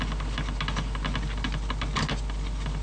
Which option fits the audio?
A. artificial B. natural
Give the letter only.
B